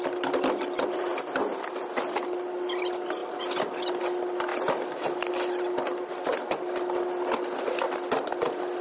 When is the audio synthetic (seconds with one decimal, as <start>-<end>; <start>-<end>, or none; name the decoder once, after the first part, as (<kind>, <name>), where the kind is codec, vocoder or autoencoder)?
none